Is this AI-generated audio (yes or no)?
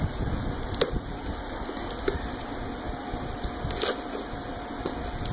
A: no